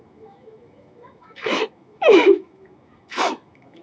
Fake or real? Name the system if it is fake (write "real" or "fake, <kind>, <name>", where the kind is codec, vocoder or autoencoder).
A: fake, autoencoder, DAC-VAE